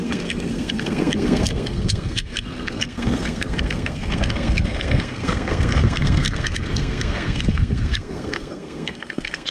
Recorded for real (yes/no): no